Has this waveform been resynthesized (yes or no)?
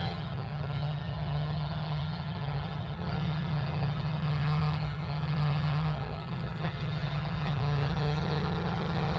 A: yes